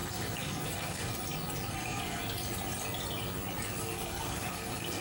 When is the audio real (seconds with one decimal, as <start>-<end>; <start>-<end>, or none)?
1.1-1.7; 2.2-3.8